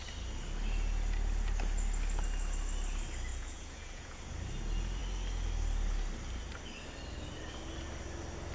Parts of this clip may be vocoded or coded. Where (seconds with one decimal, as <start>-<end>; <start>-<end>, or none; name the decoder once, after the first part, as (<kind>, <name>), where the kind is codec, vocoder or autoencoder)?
3.3-4.2 (vocoder, Vocos)